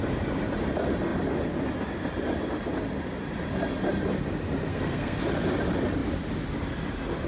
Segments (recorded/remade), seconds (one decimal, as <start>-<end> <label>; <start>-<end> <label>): 0.0-4.7 recorded; 4.7-5.2 remade; 5.2-7.3 recorded